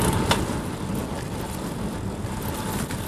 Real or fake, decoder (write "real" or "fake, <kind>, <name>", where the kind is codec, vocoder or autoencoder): real